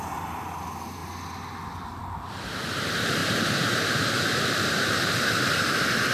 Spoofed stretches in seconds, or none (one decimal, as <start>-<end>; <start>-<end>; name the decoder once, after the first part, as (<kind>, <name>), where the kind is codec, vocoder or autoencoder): 0.0-1.0 (vocoder, BigVGAN v2); 2.3-6.1